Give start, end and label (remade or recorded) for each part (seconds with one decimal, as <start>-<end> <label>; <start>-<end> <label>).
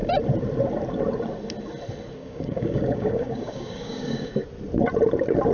0.0-2.2 recorded; 2.2-4.3 remade; 4.3-5.5 recorded